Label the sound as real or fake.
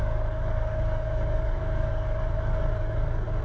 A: fake